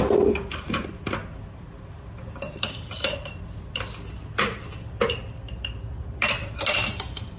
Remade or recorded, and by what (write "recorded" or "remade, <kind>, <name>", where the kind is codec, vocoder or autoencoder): recorded